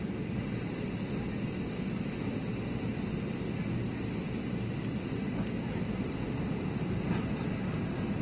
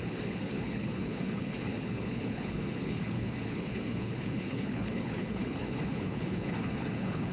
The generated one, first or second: second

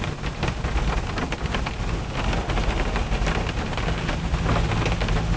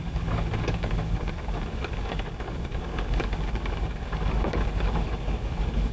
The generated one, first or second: second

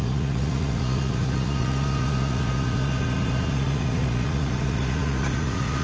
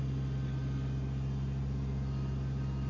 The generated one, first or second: first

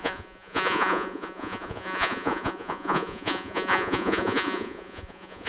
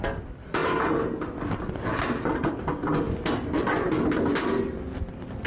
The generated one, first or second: first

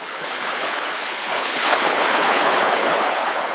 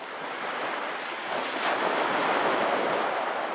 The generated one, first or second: first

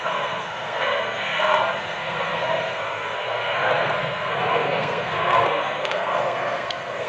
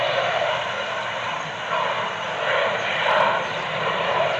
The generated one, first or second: first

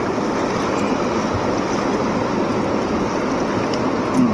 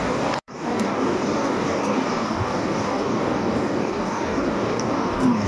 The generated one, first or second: second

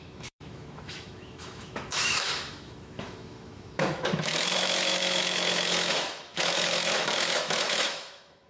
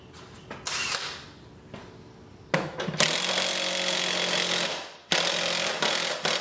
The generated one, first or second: first